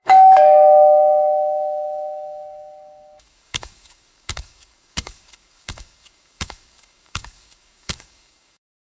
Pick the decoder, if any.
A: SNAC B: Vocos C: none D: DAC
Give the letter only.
D